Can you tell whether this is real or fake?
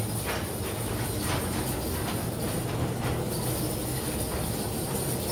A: real